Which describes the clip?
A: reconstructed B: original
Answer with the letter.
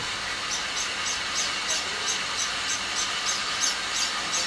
B